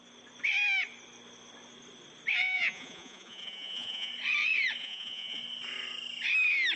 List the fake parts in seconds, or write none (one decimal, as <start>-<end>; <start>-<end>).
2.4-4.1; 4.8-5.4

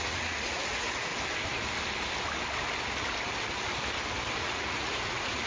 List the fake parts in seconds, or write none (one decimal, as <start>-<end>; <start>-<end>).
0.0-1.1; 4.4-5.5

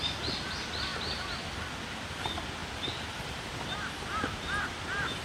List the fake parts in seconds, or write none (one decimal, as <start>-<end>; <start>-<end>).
2.6-3.4